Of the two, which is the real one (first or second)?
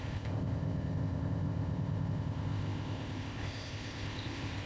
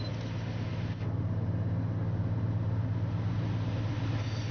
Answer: second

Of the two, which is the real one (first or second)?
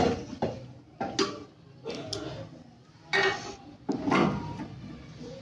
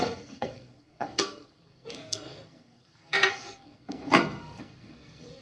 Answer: first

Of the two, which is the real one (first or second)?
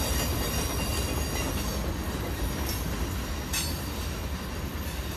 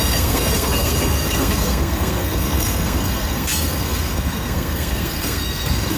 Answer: first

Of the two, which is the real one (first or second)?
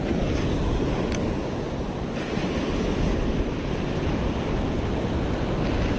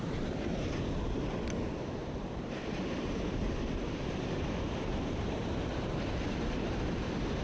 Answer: first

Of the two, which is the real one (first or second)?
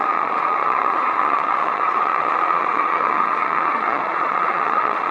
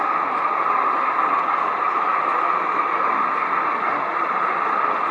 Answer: second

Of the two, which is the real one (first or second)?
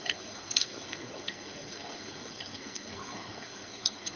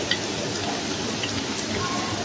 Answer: second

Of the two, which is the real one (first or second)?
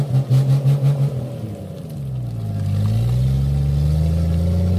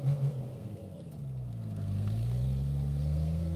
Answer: first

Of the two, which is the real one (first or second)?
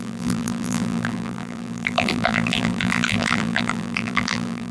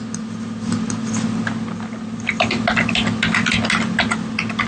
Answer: second